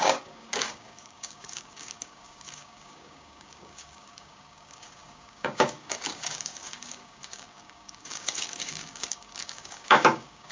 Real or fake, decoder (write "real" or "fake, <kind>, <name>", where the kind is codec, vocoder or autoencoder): fake, codec, DAC